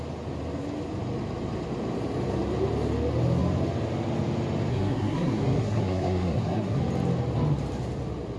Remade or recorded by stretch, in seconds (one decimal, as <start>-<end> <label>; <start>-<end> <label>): 0.0-4.7 recorded; 4.7-6.8 remade; 6.8-8.4 recorded